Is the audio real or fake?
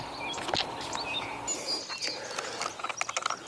real